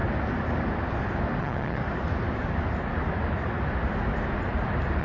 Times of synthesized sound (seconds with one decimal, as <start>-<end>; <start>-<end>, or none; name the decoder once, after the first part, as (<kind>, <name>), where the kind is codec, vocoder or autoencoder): 1.4-1.8 (vocoder, HiFi-GAN)